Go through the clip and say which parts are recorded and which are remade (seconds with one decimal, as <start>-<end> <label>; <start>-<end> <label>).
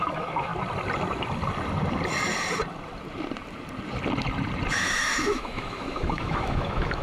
0.0-0.5 remade; 0.5-4.7 recorded; 4.7-7.0 remade